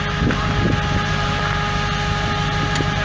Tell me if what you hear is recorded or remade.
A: recorded